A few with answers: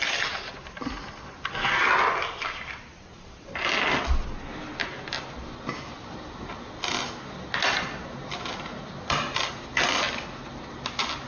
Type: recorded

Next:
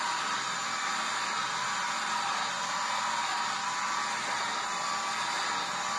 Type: recorded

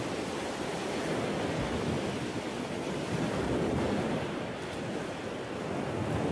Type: recorded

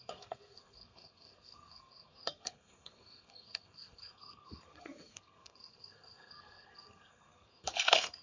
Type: remade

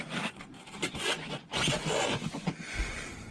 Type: remade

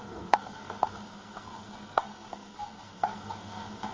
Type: remade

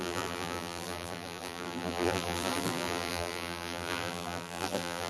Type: remade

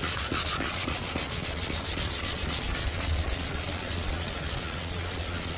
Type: remade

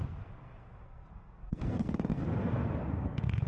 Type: remade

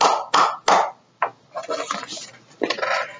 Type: recorded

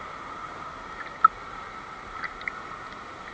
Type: recorded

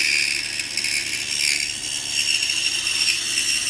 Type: recorded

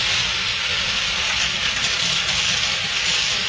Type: recorded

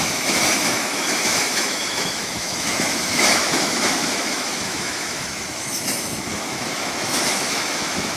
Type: remade